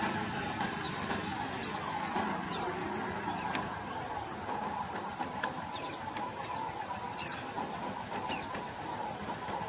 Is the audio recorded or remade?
remade